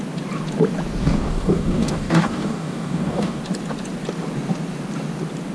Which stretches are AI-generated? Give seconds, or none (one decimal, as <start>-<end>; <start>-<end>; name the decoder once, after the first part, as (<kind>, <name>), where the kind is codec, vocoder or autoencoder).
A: 1.0-3.4 (codec, DAC)